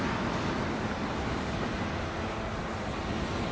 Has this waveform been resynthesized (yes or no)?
no